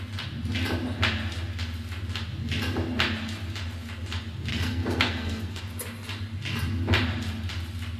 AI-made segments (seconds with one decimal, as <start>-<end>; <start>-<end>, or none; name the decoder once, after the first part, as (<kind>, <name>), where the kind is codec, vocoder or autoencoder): 4.5-5.6 (codec, SNAC)